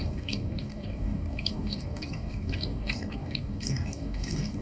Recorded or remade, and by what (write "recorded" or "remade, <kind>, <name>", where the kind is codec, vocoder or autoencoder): remade, codec, DAC